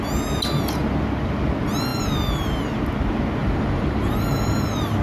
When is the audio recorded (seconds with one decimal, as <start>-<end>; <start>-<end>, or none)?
0.0-3.4; 4.3-5.0